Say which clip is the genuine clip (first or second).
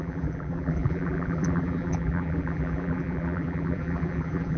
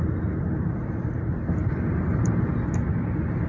second